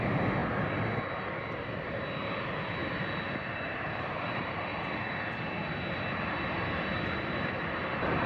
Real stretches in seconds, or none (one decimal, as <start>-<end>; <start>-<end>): 2.8-3.5; 4.7-7.0